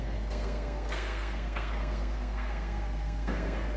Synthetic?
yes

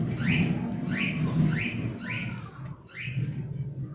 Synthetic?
no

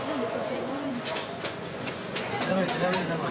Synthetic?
yes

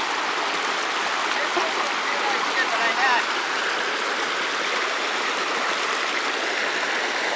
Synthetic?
no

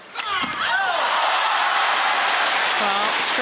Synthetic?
no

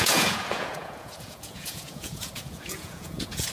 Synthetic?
yes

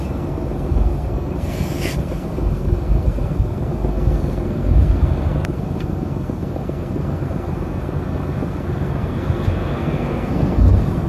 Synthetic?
yes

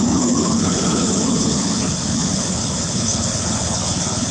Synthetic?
yes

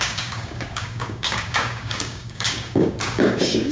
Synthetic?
yes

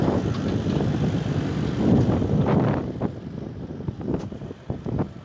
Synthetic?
no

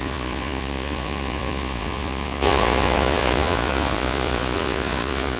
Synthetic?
yes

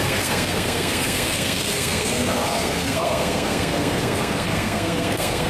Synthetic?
yes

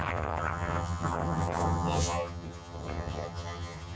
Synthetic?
yes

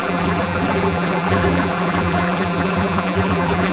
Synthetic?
yes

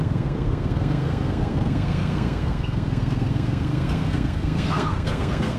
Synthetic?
yes